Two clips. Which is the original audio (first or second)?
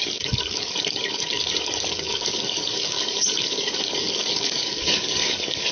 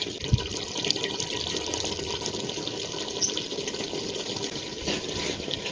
second